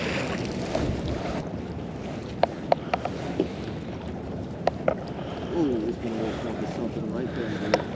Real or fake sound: real